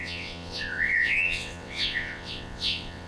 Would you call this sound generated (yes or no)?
yes